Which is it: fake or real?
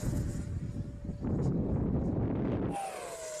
real